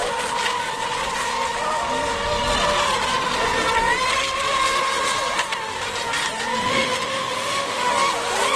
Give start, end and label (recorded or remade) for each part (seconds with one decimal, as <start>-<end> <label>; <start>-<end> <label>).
0.0-6.6 recorded; 6.6-7.9 remade; 7.9-8.6 recorded